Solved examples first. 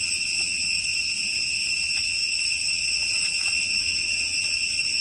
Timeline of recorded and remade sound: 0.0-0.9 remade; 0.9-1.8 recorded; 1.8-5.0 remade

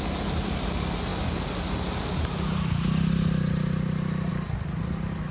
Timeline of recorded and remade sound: 0.0-5.3 recorded

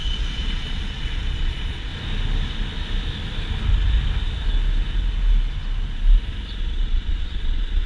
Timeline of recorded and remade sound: 0.0-1.9 remade; 1.9-6.6 recorded; 6.6-7.9 remade

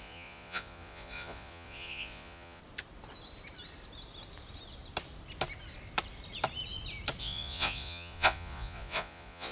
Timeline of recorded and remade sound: 0.0-2.6 remade; 2.6-7.2 recorded; 7.2-9.5 remade

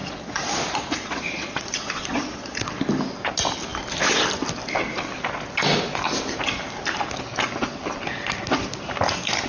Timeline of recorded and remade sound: 0.0-2.7 remade; 2.7-9.5 recorded

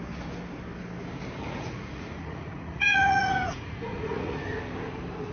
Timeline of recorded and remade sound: 0.0-1.4 recorded; 1.4-4.4 remade; 4.4-5.3 recorded